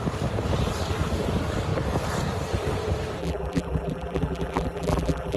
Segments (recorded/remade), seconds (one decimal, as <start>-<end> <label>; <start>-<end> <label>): 0.0-3.2 recorded; 3.2-5.4 remade